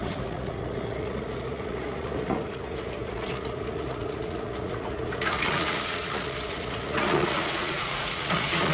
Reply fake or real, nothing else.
fake